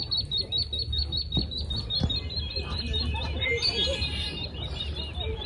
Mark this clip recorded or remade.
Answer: recorded